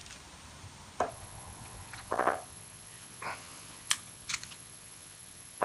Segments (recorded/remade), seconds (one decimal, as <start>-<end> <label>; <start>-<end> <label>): 0.0-1.1 recorded; 1.1-5.6 remade